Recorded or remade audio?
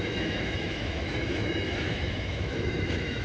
remade